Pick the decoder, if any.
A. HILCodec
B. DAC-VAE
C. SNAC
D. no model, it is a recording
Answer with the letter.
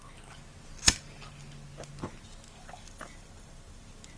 D